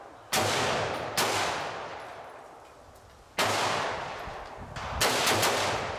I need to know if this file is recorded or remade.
recorded